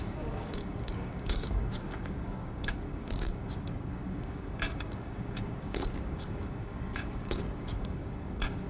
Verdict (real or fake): fake